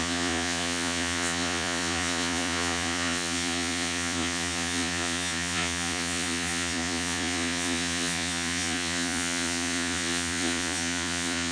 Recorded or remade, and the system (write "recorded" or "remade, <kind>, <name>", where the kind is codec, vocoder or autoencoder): remade, vocoder, Vocos